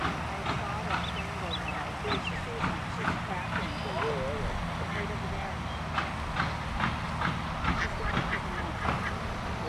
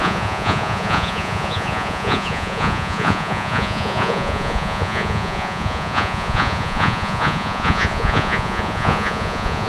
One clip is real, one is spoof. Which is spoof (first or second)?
second